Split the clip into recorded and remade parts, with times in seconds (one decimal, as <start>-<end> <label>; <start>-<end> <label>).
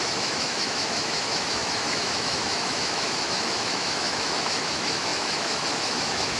0.0-6.4 remade